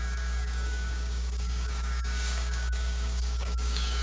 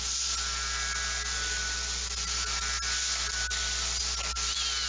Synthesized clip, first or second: first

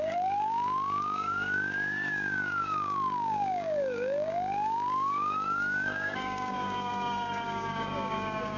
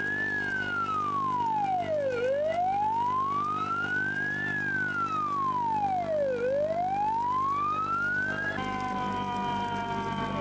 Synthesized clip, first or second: first